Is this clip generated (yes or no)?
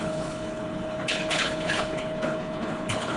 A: yes